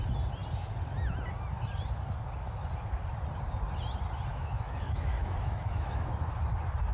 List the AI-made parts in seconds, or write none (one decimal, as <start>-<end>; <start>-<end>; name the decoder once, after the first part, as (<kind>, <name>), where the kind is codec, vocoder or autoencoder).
4.3-6.3 (autoencoder, DAC-VAE)